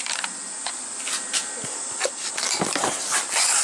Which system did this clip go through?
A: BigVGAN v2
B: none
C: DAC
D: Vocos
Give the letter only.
B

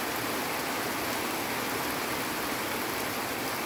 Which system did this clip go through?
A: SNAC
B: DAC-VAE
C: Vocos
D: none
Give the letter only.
D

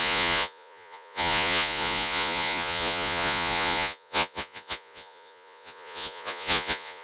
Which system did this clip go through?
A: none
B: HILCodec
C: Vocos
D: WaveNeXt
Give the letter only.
C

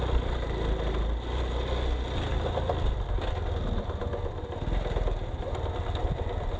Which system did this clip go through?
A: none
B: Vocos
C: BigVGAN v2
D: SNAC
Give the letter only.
A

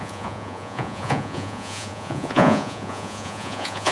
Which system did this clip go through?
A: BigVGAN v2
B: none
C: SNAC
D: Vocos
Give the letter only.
D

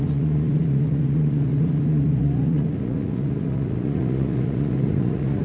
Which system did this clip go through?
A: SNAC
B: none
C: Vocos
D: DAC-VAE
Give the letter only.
C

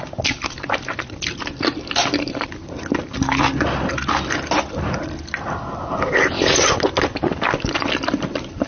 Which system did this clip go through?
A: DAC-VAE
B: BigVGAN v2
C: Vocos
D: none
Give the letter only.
D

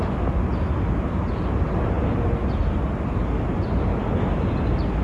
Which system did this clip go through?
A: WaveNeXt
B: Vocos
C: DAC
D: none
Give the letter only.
D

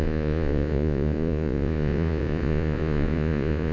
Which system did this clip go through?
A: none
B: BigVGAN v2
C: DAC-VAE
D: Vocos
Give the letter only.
D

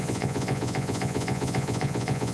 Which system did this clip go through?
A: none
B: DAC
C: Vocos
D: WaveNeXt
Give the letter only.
C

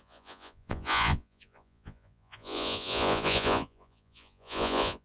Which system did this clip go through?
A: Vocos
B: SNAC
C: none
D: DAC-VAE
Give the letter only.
A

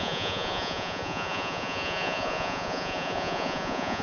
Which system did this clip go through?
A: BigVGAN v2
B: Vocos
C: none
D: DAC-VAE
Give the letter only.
B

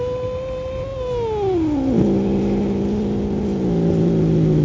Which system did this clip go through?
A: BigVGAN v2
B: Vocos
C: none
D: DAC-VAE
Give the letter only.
C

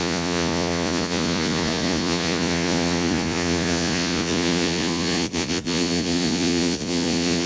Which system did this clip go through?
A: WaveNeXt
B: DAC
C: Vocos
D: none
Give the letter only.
C